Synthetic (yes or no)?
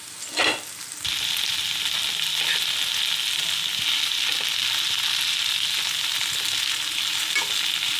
no